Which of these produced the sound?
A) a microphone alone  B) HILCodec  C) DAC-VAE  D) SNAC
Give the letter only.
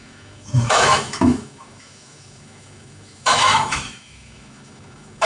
C